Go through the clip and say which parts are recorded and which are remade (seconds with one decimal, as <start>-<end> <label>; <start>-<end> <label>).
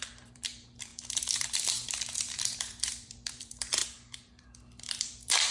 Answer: 0.0-5.5 remade